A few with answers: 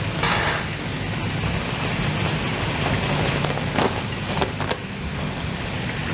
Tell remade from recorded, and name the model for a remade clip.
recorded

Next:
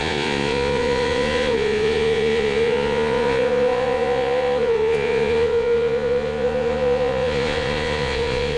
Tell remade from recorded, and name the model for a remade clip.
remade, vocoder, Vocos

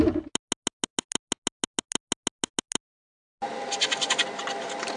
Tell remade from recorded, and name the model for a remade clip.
recorded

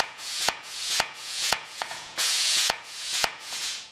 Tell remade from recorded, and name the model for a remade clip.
remade, vocoder, Vocos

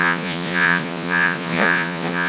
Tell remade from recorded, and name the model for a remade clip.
remade, vocoder, Vocos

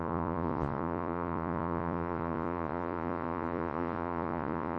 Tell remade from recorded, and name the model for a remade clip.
remade, vocoder, Vocos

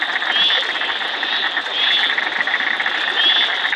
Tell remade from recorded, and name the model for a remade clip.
recorded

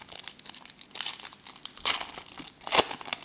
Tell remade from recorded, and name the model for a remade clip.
recorded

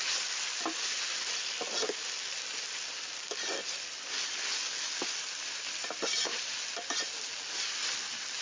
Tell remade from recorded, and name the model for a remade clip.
recorded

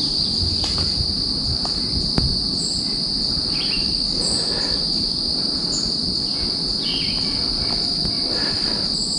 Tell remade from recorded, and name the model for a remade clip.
recorded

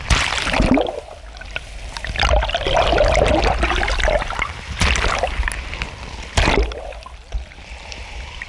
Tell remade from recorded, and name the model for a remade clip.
recorded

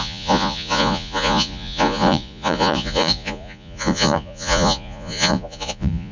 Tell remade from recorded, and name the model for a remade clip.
remade, vocoder, Vocos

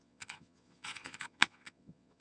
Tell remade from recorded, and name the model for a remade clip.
remade, vocoder, Vocos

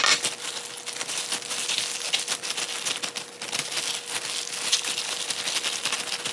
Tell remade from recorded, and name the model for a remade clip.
recorded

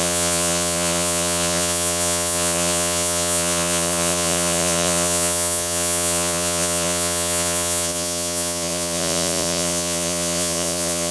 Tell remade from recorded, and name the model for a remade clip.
remade, vocoder, Vocos